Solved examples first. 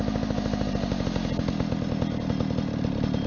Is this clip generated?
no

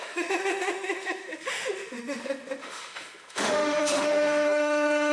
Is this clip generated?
yes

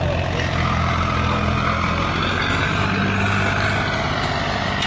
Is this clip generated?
no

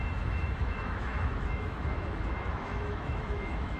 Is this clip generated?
yes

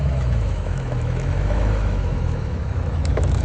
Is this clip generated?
yes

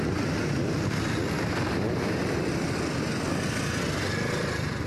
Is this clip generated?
no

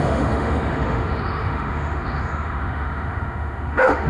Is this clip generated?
yes